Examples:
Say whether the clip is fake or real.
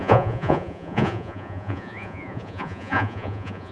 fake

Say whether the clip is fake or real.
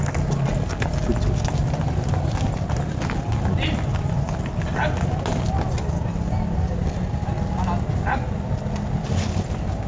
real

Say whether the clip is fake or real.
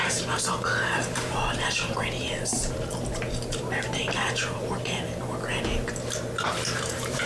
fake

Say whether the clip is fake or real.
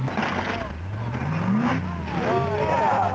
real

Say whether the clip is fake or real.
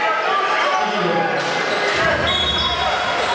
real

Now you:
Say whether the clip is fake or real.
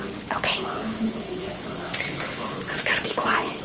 fake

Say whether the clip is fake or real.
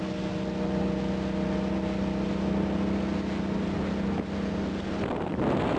real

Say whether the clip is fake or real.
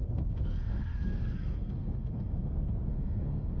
fake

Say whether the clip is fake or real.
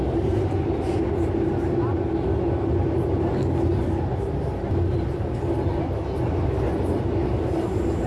real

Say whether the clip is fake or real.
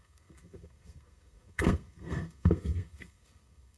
fake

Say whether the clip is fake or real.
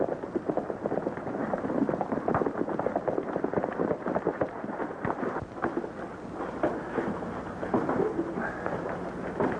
real